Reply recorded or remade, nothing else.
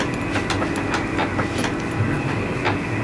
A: recorded